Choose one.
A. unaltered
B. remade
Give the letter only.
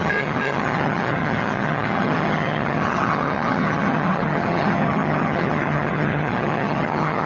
B